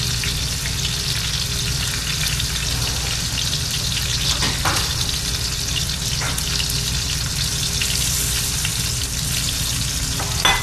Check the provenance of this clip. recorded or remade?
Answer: recorded